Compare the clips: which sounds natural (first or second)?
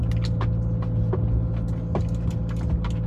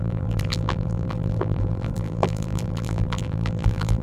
first